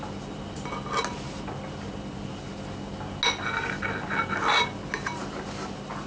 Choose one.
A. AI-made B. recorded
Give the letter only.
B